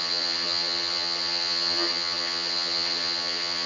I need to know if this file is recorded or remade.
remade